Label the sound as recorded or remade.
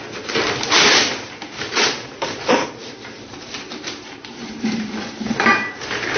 remade